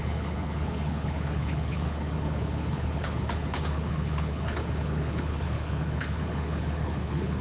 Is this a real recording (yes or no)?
no